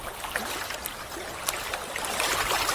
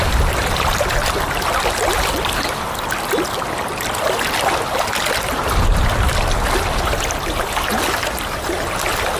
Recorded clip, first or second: second